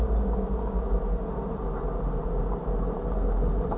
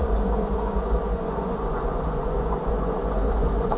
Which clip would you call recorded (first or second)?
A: first